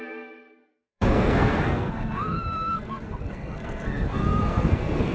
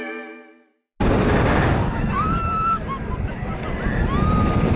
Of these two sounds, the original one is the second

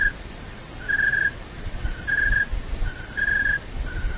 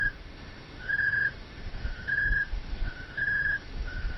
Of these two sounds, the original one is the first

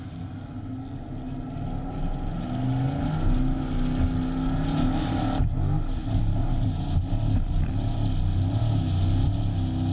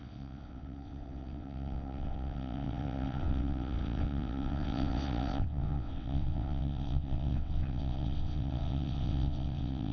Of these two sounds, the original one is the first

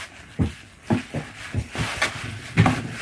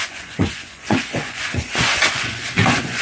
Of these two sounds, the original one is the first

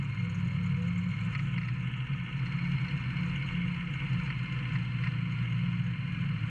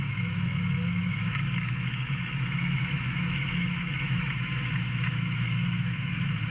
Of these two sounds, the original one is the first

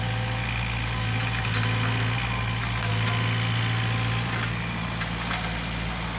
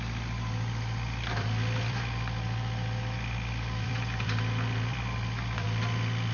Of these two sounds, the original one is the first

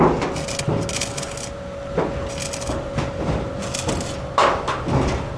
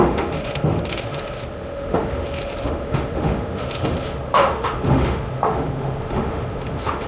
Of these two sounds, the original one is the first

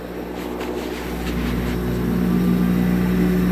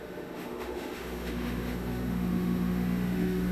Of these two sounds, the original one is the first